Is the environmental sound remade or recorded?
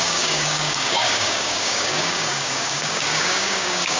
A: remade